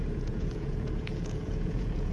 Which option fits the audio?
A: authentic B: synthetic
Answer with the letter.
B